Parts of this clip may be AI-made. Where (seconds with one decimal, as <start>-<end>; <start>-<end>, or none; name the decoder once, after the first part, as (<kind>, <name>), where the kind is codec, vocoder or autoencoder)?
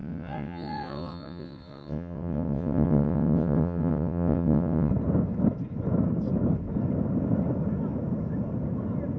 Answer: 0.0-4.9 (vocoder, WaveNeXt)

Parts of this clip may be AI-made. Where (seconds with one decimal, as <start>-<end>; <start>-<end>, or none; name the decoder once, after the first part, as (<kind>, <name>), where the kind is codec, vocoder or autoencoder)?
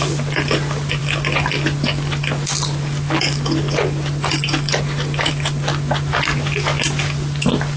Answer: none